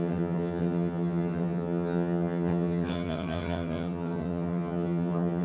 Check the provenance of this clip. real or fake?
fake